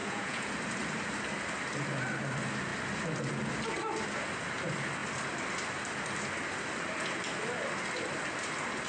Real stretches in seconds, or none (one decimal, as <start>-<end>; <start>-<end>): 0.5-8.9